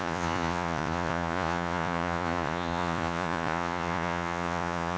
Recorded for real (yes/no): no